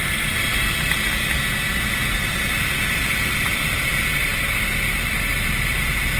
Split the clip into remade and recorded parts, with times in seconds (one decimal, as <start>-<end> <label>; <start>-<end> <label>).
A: 0.0-6.2 remade